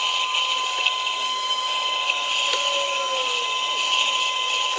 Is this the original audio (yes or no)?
yes